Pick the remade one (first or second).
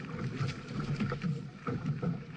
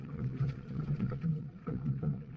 second